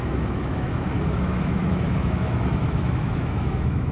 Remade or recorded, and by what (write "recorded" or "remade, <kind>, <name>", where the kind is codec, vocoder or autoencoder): remade, autoencoder, DAC-VAE